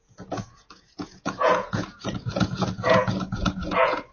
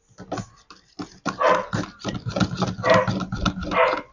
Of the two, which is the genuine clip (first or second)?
second